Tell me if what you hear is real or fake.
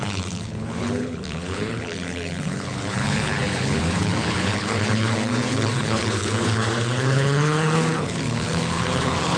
fake